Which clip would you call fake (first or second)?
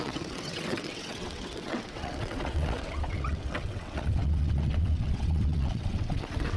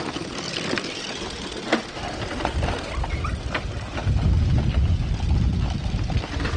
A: first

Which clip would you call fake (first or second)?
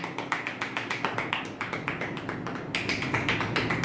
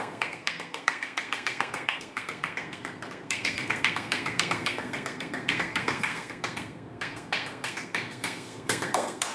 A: second